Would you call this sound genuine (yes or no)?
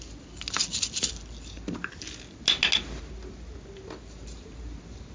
yes